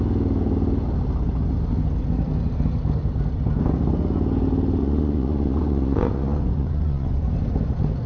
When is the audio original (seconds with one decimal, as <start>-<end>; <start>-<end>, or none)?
0.0-4.8; 7.3-8.1